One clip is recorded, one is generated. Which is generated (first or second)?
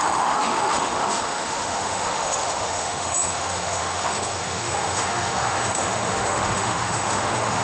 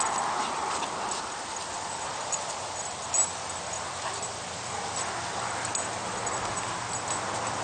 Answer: first